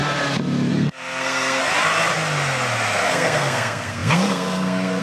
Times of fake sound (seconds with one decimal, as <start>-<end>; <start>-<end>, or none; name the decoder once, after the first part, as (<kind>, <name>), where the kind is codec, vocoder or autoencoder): 0.7-1.7 (codec, SNAC); 3.1-5.0